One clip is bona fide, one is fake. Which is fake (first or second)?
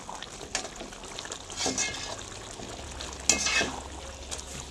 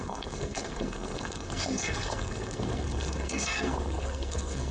second